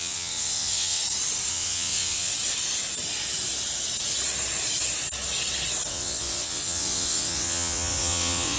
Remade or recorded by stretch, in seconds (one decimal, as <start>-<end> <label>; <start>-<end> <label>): 0.0-1.0 remade; 1.0-1.5 recorded; 1.5-2.3 remade; 2.3-5.9 recorded; 5.9-8.6 remade